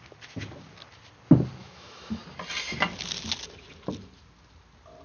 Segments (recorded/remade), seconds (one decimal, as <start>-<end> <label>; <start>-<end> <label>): 0.0-1.6 recorded; 1.6-2.2 remade; 2.2-5.0 recorded